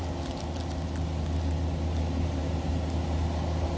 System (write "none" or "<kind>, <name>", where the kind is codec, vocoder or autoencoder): none